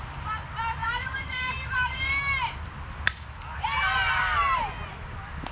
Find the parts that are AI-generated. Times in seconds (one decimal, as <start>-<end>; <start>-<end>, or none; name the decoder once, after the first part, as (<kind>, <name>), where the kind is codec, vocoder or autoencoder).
0.8-2.2 (codec, DAC)